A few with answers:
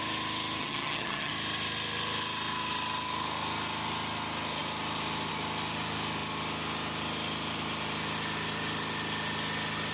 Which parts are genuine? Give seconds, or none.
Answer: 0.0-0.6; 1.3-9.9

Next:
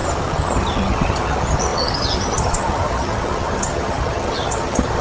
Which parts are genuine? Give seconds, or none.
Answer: none

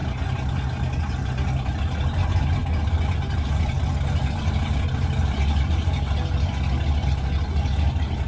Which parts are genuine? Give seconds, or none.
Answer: 0.0-8.3

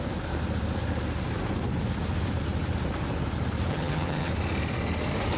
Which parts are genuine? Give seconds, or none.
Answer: 0.0-3.7; 4.3-5.4

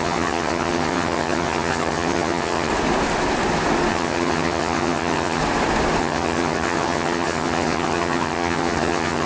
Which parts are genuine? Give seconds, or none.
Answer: 2.7-3.9; 5.4-6.0